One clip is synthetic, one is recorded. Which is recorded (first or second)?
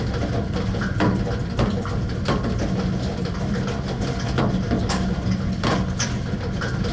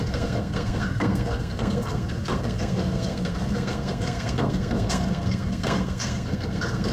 first